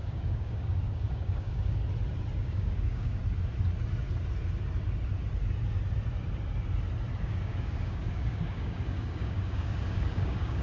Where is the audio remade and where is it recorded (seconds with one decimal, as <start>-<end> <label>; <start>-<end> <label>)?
0.0-1.8 remade; 1.8-2.4 recorded; 2.4-3.2 remade; 3.2-7.2 recorded; 7.2-10.6 remade